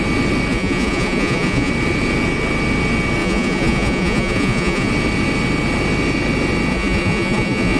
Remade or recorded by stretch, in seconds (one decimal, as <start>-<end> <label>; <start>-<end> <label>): 0.0-0.5 recorded; 0.5-1.7 remade; 1.7-3.2 recorded; 3.2-4.9 remade; 4.9-6.7 recorded; 6.7-7.8 remade